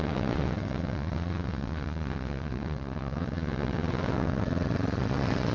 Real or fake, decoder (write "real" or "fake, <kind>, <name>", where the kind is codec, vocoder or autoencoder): fake, vocoder, WaveNeXt